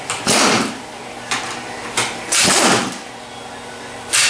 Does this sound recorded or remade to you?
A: recorded